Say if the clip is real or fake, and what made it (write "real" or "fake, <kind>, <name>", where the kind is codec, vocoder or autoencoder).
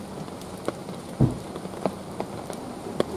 real